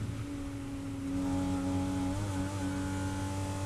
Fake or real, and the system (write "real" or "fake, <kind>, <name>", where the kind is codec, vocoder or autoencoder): real